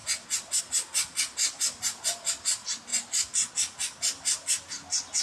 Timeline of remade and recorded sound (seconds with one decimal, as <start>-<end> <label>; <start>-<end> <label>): 0.0-5.2 recorded